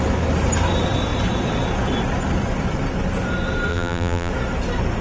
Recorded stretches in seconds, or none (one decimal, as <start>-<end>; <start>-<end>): 0.0-3.7; 4.3-5.0